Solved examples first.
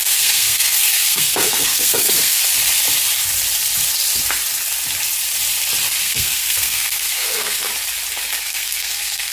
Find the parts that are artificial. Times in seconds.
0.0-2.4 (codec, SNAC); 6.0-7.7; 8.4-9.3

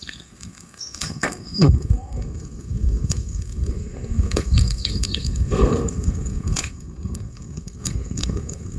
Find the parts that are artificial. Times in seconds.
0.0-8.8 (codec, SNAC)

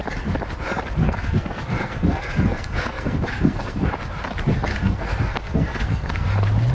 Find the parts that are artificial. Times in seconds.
1.0-3.9 (codec, SNAC); 4.7-6.3

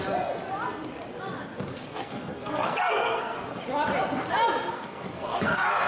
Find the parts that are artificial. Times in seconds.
1.7-3.6 (codec, SNAC); 4.7-5.9

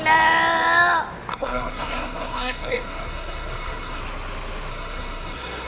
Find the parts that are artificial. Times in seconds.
1.3-4.0 (codec, SNAC); 4.7-5.7

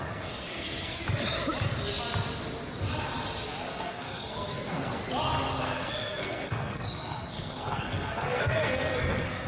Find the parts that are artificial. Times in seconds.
0.0-1.0 (codec, SNAC); 3.7-5.0; 5.6-9.5

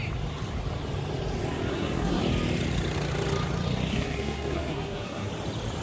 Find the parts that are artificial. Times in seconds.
1.7-2.2 (codec, SNAC); 3.9-5.3